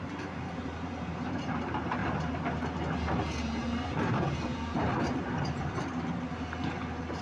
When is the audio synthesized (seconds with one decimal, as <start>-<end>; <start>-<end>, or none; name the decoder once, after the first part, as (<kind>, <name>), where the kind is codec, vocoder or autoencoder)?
0.0-2.0 (vocoder, BigVGAN v2); 3.6-7.2